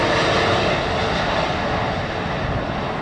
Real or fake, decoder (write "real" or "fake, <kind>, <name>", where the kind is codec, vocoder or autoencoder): real